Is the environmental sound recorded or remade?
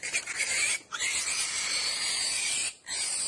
remade